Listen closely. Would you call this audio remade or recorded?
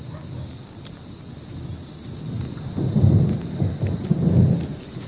recorded